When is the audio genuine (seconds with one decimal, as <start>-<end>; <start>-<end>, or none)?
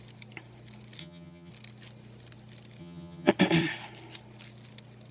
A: 0.0-1.0; 1.5-2.8; 3.3-5.1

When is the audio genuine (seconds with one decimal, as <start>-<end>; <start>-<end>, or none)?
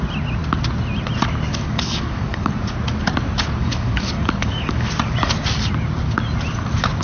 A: 0.0-1.5; 2.5-3.6; 4.9-7.0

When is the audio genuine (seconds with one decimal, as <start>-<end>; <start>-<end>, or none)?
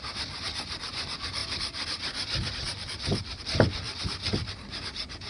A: none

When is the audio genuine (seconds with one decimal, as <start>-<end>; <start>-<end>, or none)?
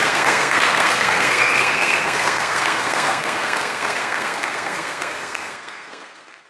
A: none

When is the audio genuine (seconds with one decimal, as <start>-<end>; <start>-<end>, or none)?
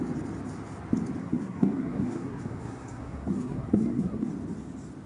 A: 0.0-1.2; 4.3-5.1